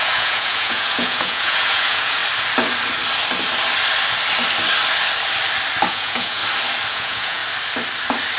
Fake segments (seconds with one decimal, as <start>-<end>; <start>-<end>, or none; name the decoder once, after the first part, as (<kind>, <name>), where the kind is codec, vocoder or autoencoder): 0.0-2.2 (vocoder, Vocos); 5.9-6.4; 6.9-7.4